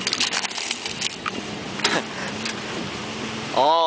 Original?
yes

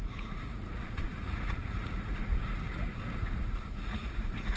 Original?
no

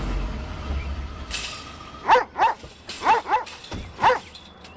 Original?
no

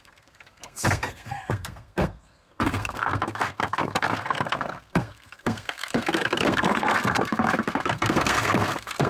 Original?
no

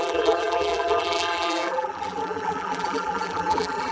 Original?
no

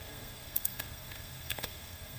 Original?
no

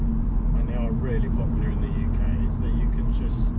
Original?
yes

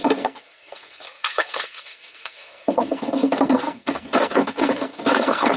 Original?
no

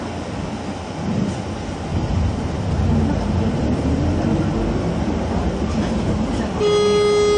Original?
yes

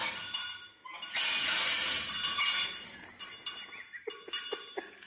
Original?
yes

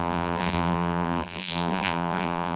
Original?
no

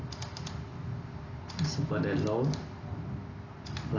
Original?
yes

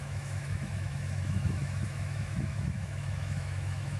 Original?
no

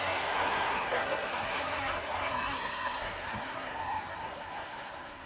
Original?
no